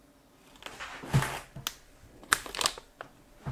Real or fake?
real